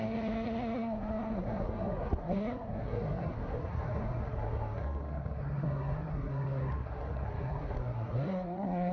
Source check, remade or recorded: remade